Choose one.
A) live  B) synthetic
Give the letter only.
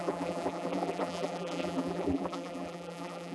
B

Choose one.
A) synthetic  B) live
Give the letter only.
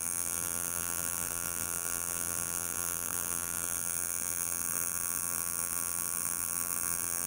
A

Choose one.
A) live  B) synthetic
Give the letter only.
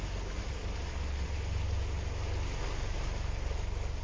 A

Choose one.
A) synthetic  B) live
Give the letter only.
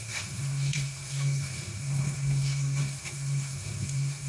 A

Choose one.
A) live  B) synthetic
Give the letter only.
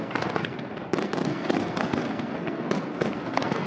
B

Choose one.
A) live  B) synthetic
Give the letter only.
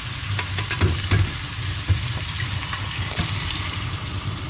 A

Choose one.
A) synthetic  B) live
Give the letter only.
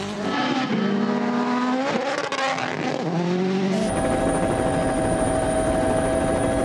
B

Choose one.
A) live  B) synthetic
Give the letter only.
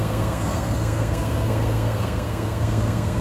B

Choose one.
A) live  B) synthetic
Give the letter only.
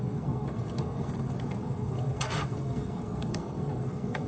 B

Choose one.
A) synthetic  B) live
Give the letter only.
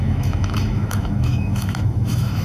A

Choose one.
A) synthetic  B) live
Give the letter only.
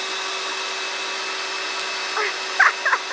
B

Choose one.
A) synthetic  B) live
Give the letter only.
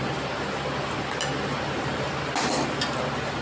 B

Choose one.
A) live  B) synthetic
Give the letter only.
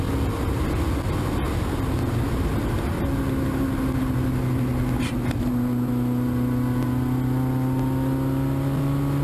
A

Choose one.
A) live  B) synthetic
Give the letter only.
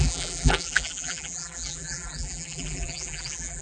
B